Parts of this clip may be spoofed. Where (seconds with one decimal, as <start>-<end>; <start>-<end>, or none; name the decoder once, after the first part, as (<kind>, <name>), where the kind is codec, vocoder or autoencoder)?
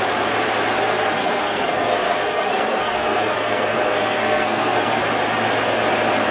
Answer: 1.2-5.0 (codec, SNAC)